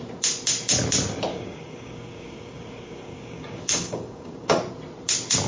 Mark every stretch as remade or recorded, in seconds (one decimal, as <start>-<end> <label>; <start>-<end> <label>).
0.0-1.3 recorded; 1.3-4.6 remade; 4.6-5.5 recorded

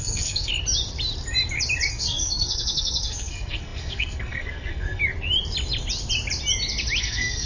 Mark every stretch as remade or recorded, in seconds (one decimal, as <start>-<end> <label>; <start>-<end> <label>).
0.0-0.5 remade; 0.5-1.9 recorded; 1.9-5.0 remade; 5.0-7.0 recorded; 7.0-7.5 remade

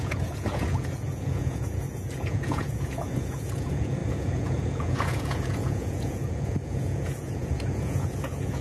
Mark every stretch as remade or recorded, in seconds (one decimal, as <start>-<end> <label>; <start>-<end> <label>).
0.0-8.6 remade